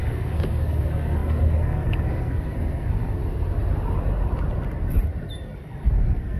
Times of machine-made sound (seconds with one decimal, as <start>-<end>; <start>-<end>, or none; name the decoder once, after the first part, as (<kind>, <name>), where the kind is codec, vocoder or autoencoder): 0.0-3.2 (codec, SNAC); 5.6-6.4